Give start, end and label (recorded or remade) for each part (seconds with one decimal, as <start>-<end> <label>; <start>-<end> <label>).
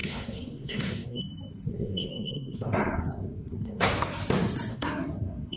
0.0-1.2 remade; 1.2-1.7 recorded; 1.7-3.9 remade; 3.9-4.7 recorded; 4.7-5.6 remade